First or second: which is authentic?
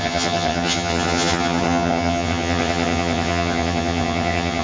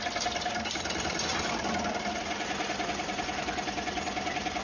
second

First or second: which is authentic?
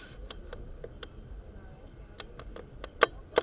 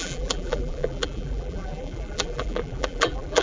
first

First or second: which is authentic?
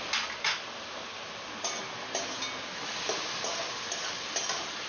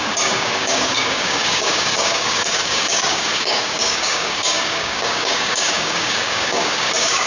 first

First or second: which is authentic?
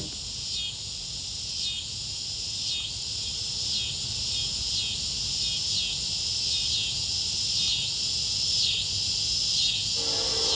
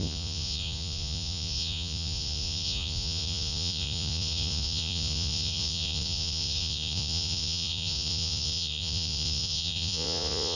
first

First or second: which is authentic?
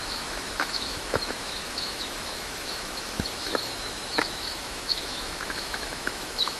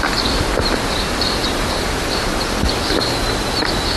second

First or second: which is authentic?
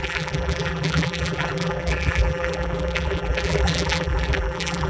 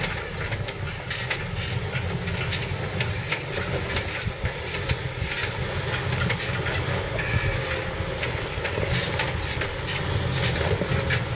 second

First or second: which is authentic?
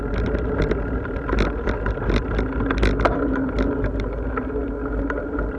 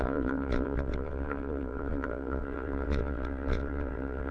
first